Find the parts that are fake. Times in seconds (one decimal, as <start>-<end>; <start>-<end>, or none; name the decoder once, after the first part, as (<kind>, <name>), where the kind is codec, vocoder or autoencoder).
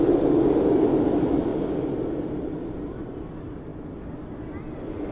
none